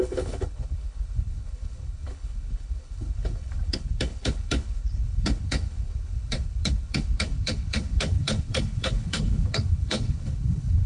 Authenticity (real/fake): fake